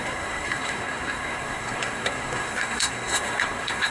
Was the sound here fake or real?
fake